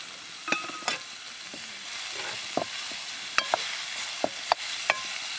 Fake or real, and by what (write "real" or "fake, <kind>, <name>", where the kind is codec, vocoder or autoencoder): real